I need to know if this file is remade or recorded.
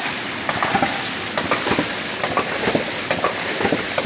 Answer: recorded